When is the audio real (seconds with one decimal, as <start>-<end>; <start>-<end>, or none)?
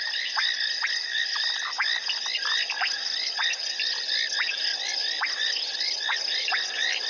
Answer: 0.0-7.1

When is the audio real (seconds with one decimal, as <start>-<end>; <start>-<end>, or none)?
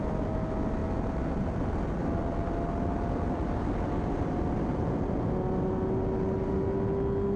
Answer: 0.0-7.4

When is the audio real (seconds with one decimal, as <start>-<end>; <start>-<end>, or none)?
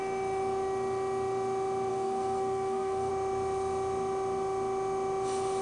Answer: 0.0-1.9; 3.1-5.6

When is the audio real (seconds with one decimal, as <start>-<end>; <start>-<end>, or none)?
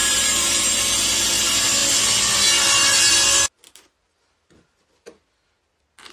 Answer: 0.8-6.1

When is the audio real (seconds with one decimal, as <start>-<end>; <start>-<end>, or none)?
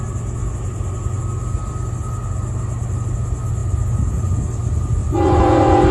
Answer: 0.0-5.0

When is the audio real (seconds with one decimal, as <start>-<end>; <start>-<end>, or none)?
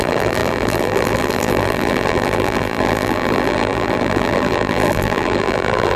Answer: none